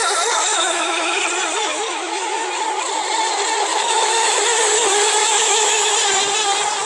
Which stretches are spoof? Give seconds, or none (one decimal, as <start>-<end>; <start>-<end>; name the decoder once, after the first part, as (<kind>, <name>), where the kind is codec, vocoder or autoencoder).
0.5-1.2 (autoencoder, DAC-VAE); 1.7-2.5; 3.7-4.4; 5.2-5.9